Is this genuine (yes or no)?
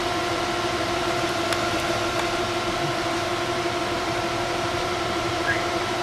no